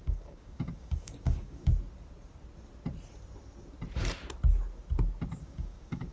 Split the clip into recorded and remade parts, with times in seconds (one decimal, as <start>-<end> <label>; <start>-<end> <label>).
0.0-1.7 remade; 1.7-5.4 recorded; 5.4-6.1 remade